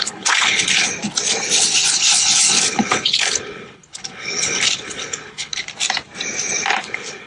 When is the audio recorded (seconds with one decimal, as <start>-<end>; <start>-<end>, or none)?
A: 0.9-1.9; 5.6-6.8